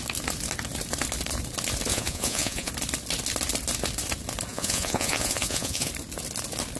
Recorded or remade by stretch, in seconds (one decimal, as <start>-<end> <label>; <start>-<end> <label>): 0.0-1.9 recorded; 1.9-2.7 remade; 2.7-4.5 recorded; 4.5-5.9 remade; 5.9-6.8 recorded